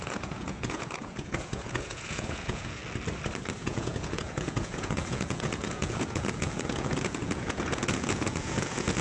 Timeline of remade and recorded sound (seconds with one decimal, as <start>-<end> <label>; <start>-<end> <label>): 0.0-2.8 remade; 2.8-3.6 recorded; 3.6-9.0 remade